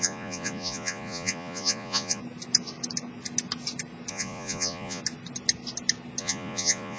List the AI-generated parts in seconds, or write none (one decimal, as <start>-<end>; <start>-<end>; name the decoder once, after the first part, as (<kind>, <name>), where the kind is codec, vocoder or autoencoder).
0.0-2.2 (vocoder, Vocos); 4.1-5.0; 6.2-7.0